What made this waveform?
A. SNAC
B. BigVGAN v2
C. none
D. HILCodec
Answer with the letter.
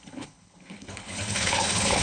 D